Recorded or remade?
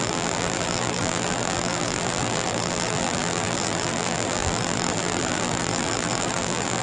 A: remade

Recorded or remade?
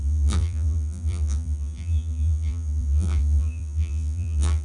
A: remade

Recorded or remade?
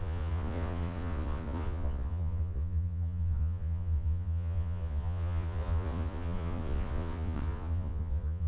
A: remade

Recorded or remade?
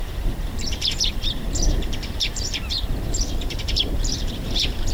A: remade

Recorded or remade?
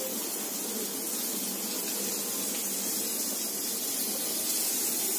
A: recorded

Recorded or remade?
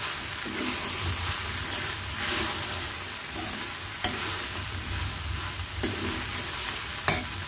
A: recorded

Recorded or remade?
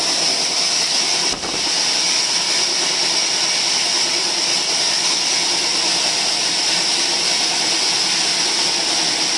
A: recorded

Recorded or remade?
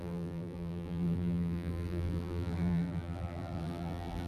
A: remade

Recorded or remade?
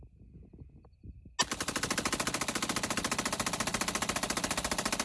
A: recorded